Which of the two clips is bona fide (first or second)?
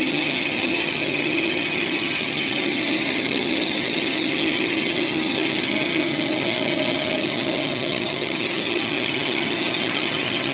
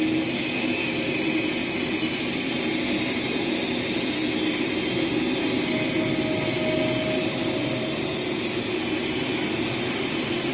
second